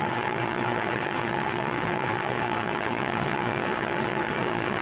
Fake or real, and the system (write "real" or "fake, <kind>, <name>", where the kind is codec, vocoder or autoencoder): fake, vocoder, WaveNeXt